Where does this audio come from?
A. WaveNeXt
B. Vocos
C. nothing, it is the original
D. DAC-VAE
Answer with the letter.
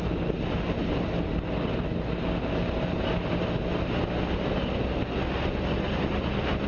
C